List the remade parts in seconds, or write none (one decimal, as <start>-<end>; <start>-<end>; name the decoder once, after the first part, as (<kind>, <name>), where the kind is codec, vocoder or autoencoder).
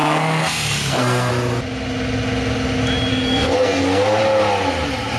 0.0-1.3 (codec, SNAC); 3.1-4.2